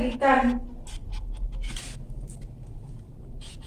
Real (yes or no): yes